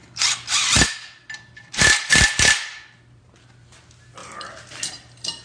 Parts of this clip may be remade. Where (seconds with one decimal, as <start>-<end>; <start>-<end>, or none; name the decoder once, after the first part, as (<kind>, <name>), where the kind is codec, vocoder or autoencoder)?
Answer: none